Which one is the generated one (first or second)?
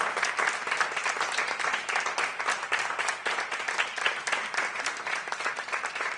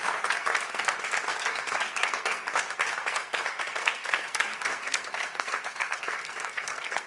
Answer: second